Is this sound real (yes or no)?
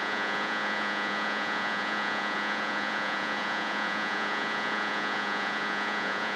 no